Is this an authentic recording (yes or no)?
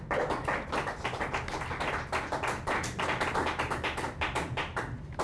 yes